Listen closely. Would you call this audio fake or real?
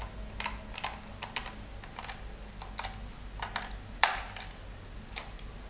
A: real